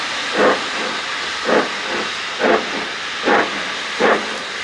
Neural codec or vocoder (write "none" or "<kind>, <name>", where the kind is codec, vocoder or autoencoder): none